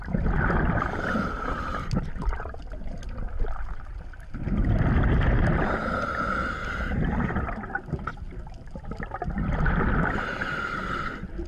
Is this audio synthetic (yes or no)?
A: no